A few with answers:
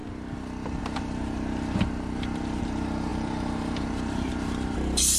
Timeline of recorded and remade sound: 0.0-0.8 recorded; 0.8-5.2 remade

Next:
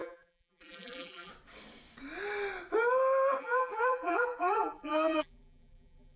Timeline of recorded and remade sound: 0.0-1.3 remade; 1.3-3.4 recorded; 3.4-6.2 remade

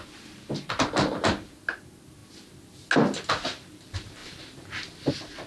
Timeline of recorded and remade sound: 0.0-4.2 recorded; 4.2-5.1 remade; 5.1-5.5 recorded